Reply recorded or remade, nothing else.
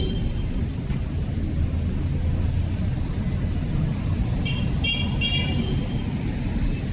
recorded